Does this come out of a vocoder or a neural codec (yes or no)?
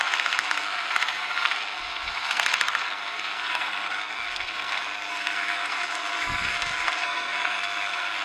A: yes